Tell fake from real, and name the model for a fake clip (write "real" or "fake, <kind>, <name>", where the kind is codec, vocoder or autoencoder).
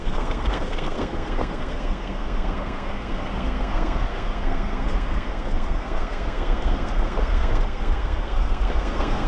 fake, codec, SNAC